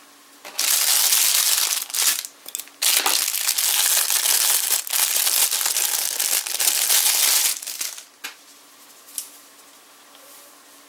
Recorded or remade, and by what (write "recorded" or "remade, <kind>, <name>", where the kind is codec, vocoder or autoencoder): recorded